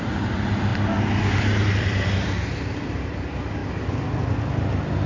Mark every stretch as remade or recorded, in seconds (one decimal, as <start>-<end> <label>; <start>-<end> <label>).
0.0-3.6 remade; 3.6-4.5 recorded; 4.5-5.1 remade

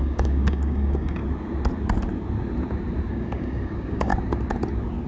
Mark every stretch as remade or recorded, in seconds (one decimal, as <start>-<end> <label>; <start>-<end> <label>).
0.0-1.2 remade; 1.2-3.1 recorded; 3.1-4.1 remade; 4.1-5.1 recorded